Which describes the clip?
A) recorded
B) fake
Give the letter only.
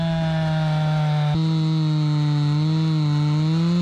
A